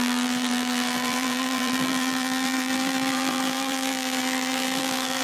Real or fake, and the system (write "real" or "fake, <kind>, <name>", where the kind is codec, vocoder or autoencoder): fake, vocoder, BigVGAN v2